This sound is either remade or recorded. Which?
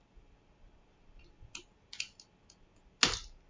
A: recorded